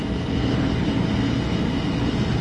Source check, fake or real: real